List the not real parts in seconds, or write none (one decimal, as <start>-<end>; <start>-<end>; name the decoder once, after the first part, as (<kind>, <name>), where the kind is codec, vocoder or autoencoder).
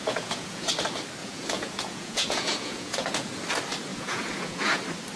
0.0-0.7 (vocoder, Vocos); 1.2-3.3; 3.9-4.8